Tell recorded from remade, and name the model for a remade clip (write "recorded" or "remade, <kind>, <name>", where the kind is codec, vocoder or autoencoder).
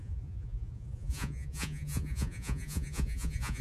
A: remade, vocoder, Vocos